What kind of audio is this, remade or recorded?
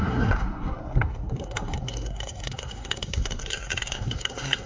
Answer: remade